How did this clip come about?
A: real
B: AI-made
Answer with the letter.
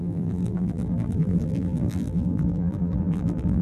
B